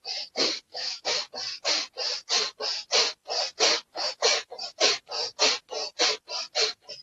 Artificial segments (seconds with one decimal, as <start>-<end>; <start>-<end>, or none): 0.7-1.2; 3.9-4.5